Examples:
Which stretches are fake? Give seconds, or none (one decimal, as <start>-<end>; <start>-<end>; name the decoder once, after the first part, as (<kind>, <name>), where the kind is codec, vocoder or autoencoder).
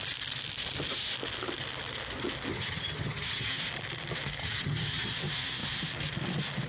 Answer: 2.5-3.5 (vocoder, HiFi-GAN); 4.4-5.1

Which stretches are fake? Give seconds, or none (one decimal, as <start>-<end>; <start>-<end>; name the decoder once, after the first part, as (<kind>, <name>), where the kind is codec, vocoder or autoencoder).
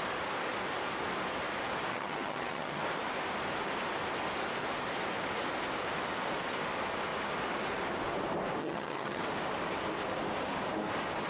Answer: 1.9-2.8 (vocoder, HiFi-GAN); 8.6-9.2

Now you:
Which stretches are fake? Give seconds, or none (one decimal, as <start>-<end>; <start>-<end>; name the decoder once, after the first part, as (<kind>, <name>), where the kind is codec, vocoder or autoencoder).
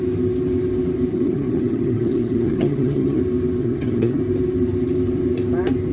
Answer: 1.1-3.2 (vocoder, HiFi-GAN); 3.6-4.2